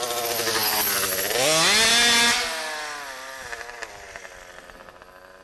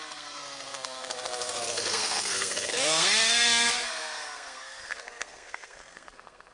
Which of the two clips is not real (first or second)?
second